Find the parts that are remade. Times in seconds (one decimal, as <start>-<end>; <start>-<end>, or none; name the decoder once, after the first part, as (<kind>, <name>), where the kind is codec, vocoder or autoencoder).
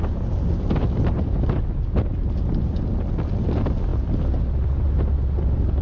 none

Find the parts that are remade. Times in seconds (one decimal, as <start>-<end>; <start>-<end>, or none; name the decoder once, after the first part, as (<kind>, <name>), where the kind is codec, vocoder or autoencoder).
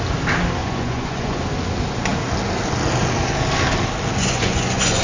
0.6-1.4 (vocoder, Vocos); 4.2-5.0